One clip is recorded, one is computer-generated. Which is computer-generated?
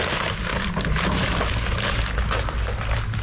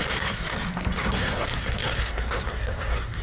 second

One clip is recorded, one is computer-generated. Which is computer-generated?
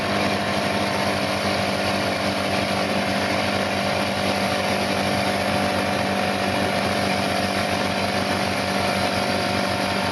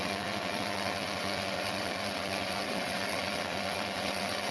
second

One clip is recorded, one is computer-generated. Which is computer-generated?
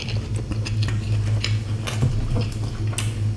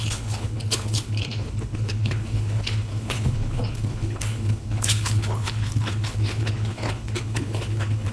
second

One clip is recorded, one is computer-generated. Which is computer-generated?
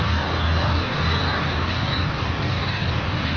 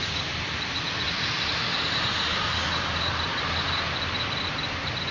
first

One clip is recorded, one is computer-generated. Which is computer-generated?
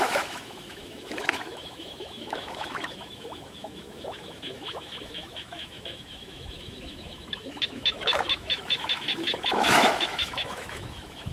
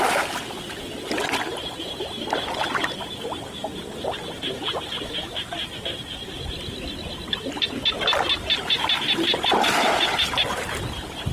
first